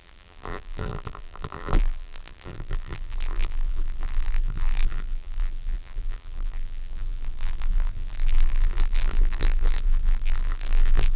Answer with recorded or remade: remade